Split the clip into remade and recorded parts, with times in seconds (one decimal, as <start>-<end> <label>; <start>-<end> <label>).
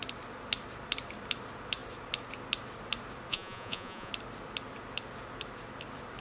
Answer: 0.0-3.3 recorded; 3.3-4.1 remade; 4.1-6.2 recorded